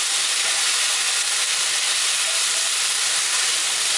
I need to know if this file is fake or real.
real